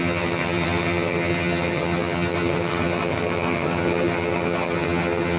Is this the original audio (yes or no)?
no